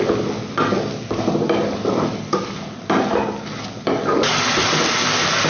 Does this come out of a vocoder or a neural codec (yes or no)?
no